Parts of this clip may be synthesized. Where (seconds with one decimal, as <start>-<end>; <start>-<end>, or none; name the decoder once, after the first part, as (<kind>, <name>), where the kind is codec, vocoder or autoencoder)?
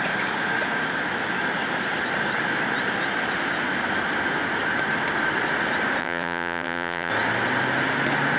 6.0-7.1 (vocoder, HiFi-GAN)